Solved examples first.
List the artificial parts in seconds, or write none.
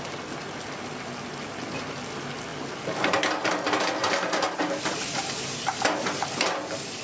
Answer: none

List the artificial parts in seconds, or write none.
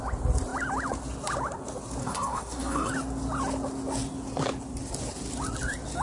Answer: 2.0-2.9 (codec, SNAC)